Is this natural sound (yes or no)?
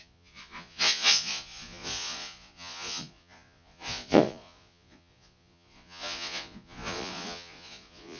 no